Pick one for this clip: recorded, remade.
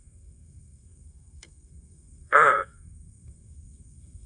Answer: remade